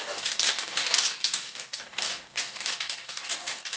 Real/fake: fake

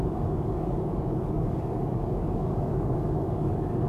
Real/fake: fake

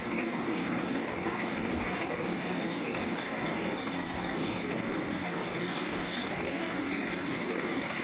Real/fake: fake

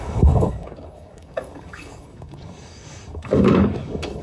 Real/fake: fake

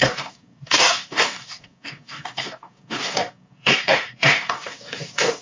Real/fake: fake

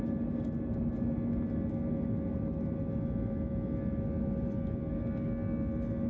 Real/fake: real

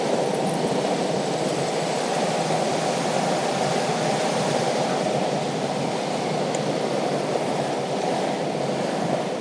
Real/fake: real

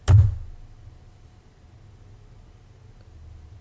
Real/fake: real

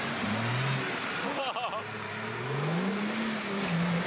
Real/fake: real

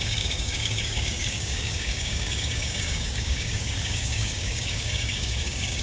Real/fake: fake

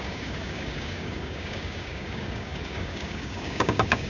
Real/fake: fake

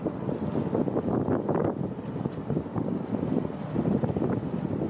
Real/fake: real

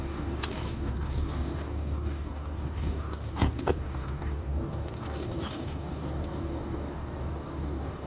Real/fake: fake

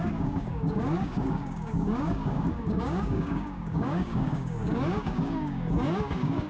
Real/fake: fake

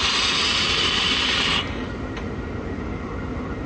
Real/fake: real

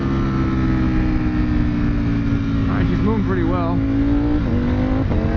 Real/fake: real